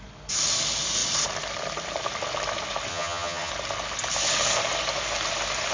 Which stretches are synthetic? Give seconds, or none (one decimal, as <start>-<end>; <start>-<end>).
2.9-3.5

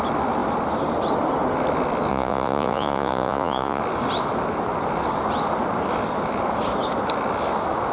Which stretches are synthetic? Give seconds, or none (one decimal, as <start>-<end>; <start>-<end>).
2.1-3.8

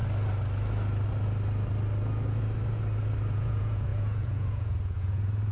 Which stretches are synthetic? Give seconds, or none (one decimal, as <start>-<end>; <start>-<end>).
3.3-5.5

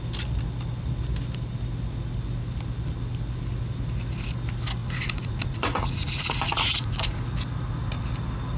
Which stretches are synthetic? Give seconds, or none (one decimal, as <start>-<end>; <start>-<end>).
4.8-7.2

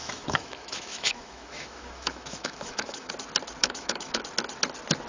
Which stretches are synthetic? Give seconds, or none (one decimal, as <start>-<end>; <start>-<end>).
0.0-3.1; 3.6-4.2

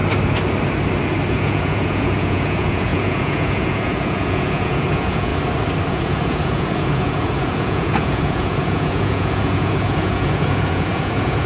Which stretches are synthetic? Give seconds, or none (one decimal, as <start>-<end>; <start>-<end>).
1.3-5.3; 5.9-11.5

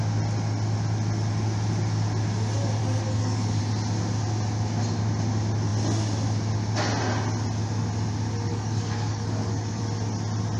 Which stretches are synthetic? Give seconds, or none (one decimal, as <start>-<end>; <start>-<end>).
2.8-3.6; 8.5-9.8